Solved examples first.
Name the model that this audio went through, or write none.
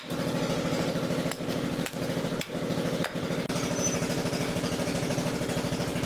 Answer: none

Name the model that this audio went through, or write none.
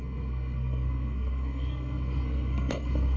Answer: codec, SNAC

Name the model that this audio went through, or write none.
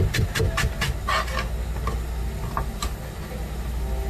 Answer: none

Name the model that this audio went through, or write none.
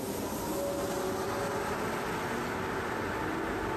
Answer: none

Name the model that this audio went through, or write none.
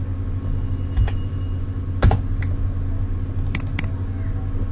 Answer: none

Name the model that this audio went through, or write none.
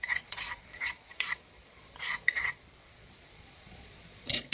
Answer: vocoder, Vocos